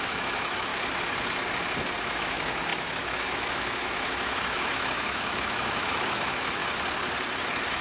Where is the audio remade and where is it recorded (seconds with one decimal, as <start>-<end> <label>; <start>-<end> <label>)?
0.0-0.7 remade; 0.7-2.1 recorded; 2.1-6.6 remade; 6.6-7.8 recorded